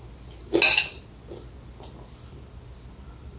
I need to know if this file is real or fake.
real